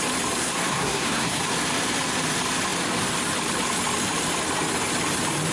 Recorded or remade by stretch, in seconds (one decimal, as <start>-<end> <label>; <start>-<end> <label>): 0.0-0.4 recorded; 0.4-1.4 remade; 1.4-5.5 recorded